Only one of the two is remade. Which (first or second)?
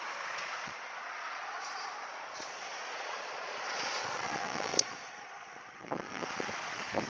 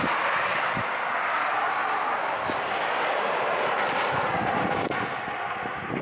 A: first